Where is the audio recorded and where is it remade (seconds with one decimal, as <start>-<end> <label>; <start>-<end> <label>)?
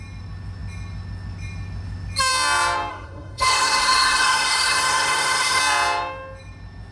0.0-2.9 recorded; 2.9-5.6 remade; 5.6-6.9 recorded